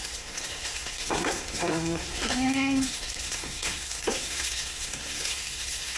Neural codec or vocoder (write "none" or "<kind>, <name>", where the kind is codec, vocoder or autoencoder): codec, SNAC